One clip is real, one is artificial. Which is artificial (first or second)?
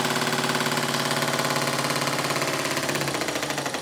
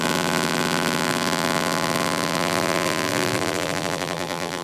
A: second